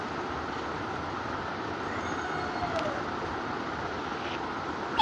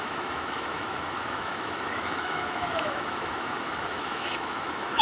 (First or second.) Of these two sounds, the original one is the first